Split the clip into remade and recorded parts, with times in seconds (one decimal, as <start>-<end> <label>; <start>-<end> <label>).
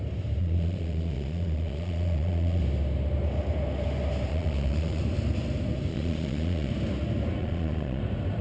0.0-0.4 recorded; 0.4-2.6 remade; 2.6-4.3 recorded; 4.3-5.0 remade; 5.0-5.9 recorded; 5.9-6.7 remade; 6.7-7.4 recorded; 7.4-8.0 remade; 8.0-8.4 recorded